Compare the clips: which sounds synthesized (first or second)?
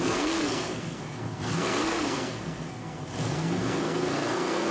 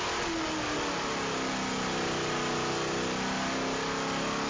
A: first